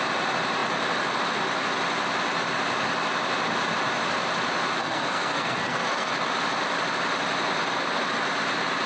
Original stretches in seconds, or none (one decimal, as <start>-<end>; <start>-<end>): 0.0-4.8; 6.1-8.9